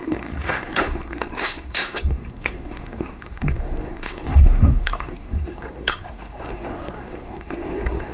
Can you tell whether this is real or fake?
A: fake